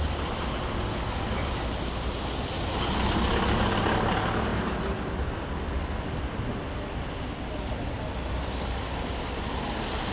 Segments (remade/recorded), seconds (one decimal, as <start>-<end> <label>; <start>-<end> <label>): 0.0-4.5 recorded; 4.5-5.5 remade; 5.5-10.1 recorded